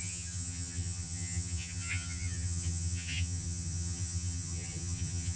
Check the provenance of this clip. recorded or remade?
remade